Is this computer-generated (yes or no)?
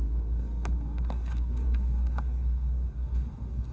yes